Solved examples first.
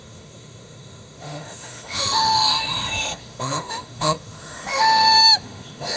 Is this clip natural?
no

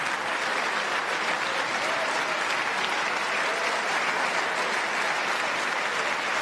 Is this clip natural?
yes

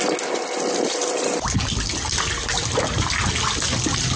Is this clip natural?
yes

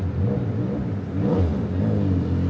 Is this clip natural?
yes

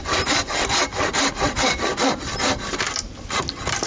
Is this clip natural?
yes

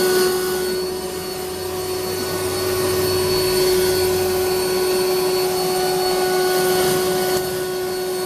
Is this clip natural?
yes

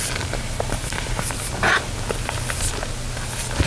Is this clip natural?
yes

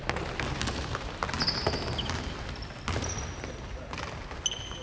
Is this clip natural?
yes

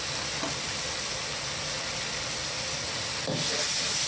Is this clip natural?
yes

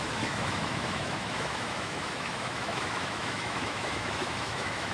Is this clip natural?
no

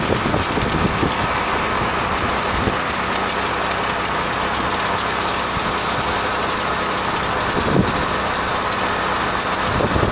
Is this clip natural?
yes